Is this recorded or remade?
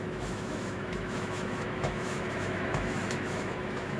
remade